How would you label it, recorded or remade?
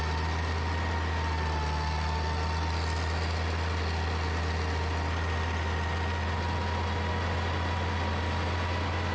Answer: recorded